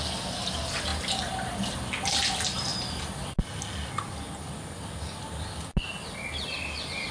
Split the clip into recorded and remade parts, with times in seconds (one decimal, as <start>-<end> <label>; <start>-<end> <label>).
0.0-7.1 recorded